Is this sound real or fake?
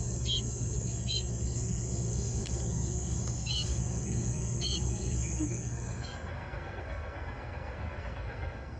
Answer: fake